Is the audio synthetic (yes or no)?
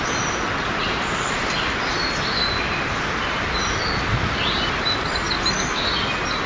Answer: no